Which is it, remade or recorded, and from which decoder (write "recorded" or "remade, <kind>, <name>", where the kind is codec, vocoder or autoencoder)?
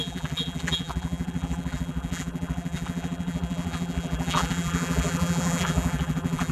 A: remade, vocoder, BigVGAN v2